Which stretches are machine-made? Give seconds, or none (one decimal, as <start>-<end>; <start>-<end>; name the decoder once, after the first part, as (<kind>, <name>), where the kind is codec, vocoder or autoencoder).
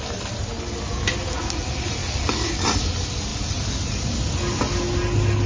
none